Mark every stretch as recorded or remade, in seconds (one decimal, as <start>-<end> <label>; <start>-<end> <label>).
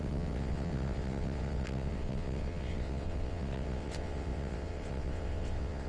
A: 0.0-5.9 remade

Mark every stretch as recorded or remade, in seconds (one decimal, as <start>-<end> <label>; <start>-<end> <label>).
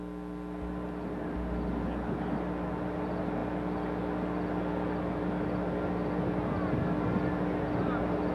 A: 0.0-8.3 recorded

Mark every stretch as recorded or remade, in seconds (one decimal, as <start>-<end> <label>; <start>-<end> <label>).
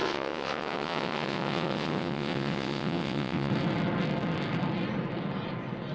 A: 0.0-3.5 remade; 3.5-5.9 recorded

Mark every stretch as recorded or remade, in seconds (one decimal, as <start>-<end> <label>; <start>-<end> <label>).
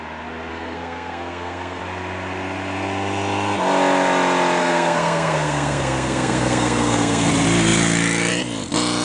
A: 0.0-0.5 recorded; 0.5-1.8 remade; 1.8-4.6 recorded; 4.6-7.3 remade; 7.3-9.0 recorded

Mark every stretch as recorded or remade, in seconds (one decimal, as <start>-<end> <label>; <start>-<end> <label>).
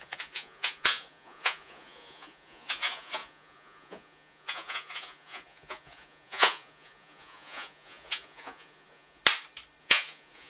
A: 0.0-9.2 remade; 9.2-9.8 recorded; 9.8-10.5 remade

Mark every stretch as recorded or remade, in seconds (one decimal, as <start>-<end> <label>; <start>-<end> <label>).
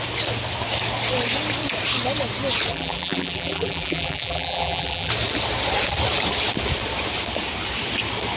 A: 0.0-2.7 recorded; 2.7-5.1 remade; 5.1-8.4 recorded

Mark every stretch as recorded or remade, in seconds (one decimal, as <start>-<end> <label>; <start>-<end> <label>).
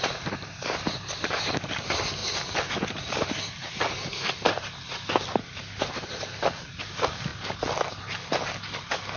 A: 0.0-9.2 recorded